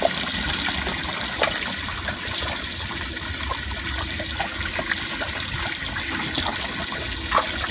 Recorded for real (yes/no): yes